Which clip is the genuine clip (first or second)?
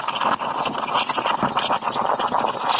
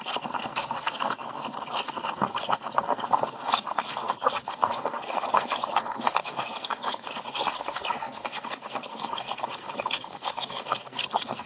first